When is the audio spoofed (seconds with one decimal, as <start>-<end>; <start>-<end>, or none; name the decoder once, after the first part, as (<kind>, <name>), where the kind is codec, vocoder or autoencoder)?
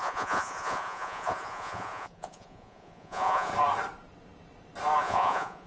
0.0-3.5 (vocoder, Vocos); 5.0-5.7